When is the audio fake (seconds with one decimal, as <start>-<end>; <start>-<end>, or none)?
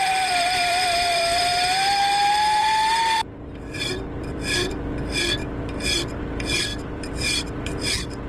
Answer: 0.0-1.5; 2.6-5.4; 6.2-8.3